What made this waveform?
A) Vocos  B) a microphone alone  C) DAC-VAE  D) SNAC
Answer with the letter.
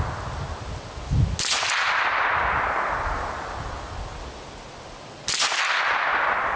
B